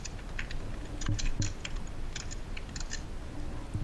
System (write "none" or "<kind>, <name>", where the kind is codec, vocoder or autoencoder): none